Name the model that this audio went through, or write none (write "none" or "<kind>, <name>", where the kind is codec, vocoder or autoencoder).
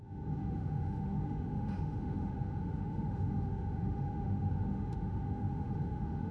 autoencoder, DAC-VAE